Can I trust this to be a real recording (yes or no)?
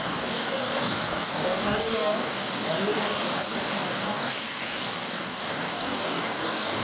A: no